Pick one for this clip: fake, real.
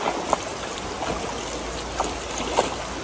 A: real